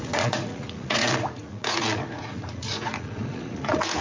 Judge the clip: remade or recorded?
remade